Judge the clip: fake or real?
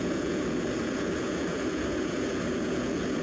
fake